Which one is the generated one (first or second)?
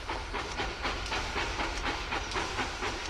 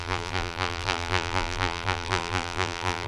second